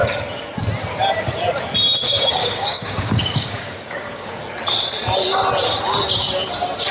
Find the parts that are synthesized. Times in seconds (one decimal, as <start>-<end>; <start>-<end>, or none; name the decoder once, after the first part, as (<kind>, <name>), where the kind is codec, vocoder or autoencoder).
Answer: 2.0-4.4 (codec, DAC)